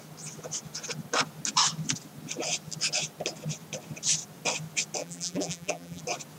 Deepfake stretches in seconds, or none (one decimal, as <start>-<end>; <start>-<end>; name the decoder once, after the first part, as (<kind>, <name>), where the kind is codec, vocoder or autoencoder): 5.0-6.0 (vocoder, BigVGAN v2)